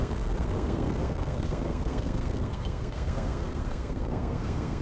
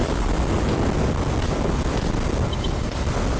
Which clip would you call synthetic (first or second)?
first